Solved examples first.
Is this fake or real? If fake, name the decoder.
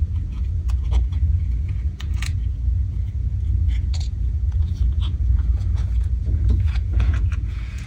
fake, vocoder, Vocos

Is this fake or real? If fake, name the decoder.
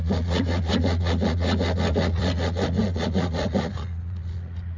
fake, vocoder, Vocos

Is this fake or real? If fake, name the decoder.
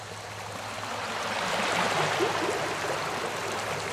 real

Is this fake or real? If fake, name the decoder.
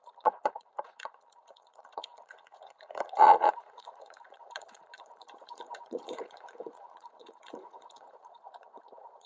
fake, vocoder, Vocos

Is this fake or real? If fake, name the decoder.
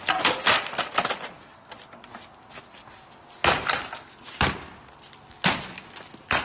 real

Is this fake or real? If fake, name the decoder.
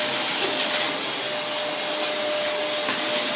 real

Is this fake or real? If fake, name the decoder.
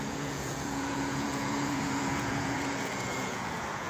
fake, vocoder, Vocos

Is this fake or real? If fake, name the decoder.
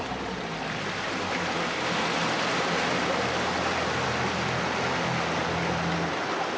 real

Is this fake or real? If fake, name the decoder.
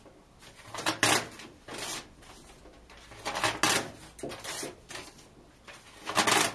real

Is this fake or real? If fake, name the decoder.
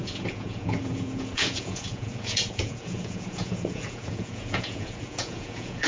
fake, vocoder, Vocos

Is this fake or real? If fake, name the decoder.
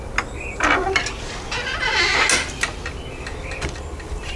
real